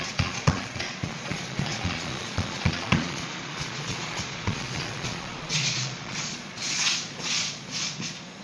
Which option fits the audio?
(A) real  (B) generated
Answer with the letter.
B